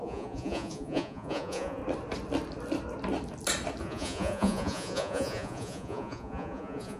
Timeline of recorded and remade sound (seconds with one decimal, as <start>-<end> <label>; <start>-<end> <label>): 0.0-1.8 remade; 1.8-3.8 recorded; 3.8-7.0 remade

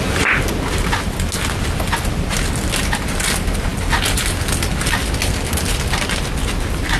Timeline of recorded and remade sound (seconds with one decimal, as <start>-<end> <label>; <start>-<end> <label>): 0.0-7.0 recorded

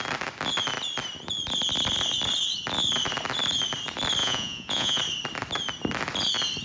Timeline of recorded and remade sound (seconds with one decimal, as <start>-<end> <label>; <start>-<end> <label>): 0.0-4.2 recorded; 4.2-5.0 remade; 5.0-6.6 recorded

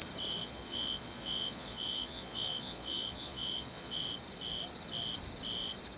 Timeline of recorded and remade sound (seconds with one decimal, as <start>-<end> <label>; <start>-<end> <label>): 0.0-0.4 recorded; 0.4-4.0 remade; 4.0-6.0 recorded

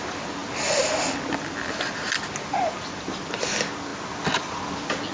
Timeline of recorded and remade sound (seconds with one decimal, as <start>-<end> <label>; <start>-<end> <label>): 0.0-5.1 recorded